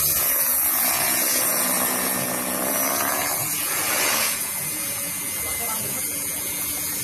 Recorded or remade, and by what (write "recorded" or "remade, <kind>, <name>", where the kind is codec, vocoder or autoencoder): remade, vocoder, Vocos